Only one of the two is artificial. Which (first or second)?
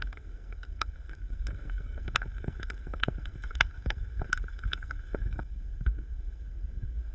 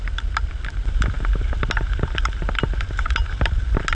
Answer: first